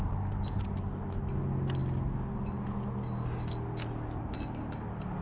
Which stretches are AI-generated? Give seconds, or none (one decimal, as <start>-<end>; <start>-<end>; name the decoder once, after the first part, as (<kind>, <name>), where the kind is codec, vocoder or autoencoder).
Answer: none